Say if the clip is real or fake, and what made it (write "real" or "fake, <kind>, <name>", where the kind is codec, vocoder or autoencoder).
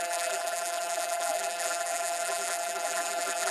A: fake, vocoder, BigVGAN v2